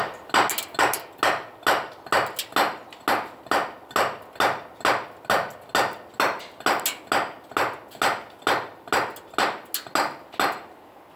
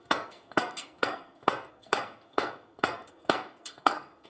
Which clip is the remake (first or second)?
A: second